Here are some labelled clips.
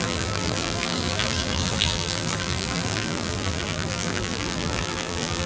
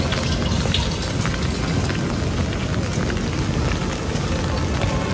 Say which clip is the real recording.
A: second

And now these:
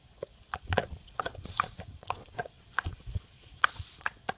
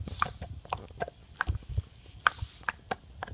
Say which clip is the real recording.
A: second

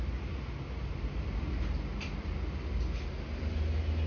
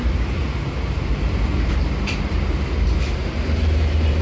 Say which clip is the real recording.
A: first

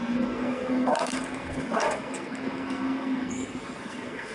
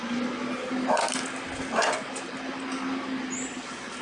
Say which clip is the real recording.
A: second